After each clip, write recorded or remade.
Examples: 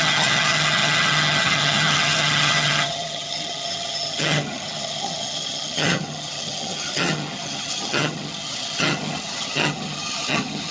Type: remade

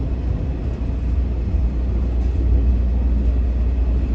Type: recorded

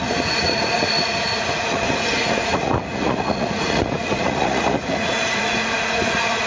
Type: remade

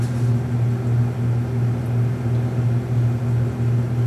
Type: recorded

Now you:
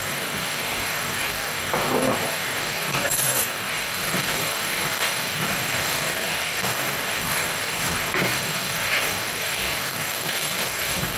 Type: remade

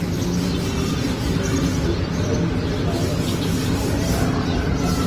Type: recorded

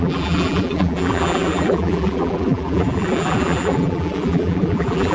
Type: remade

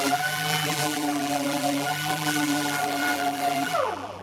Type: remade